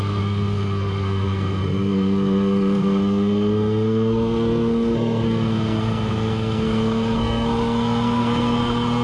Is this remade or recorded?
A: remade